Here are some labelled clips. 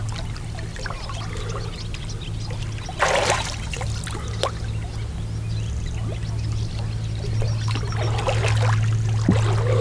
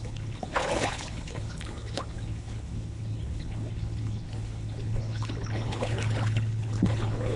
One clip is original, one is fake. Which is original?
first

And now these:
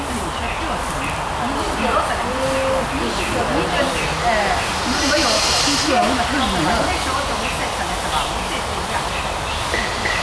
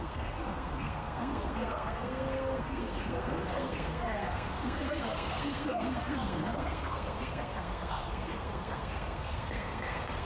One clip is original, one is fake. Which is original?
first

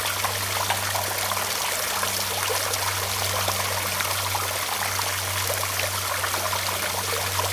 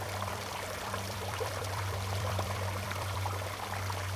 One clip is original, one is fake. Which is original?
first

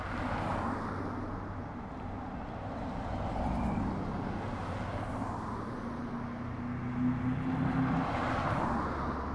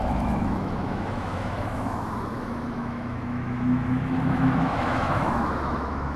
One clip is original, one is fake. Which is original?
first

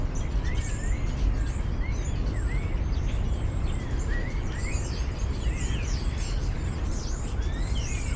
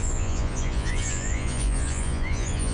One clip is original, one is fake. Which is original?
first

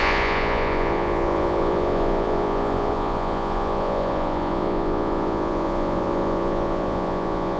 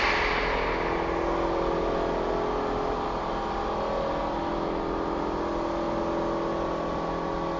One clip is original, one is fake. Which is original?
second